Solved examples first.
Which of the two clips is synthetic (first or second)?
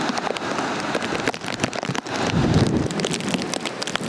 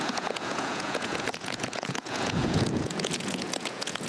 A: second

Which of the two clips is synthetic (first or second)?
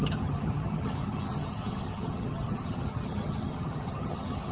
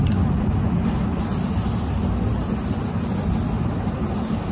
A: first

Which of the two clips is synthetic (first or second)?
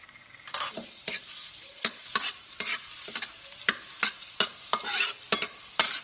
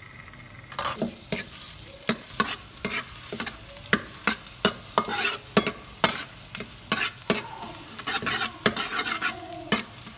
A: first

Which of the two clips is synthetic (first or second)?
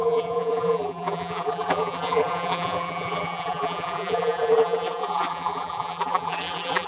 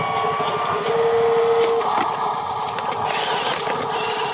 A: first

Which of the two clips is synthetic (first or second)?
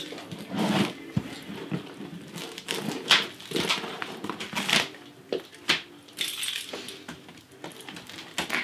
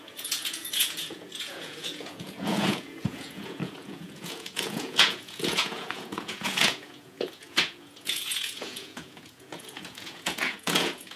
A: second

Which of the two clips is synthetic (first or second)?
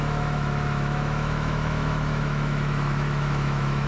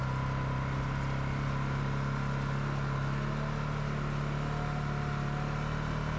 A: first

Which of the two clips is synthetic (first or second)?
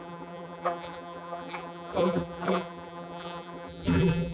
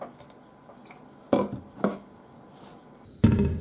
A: first